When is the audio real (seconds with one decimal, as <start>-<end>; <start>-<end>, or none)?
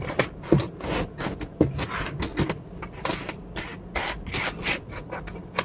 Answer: 0.0-5.6